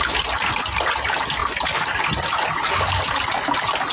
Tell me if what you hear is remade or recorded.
recorded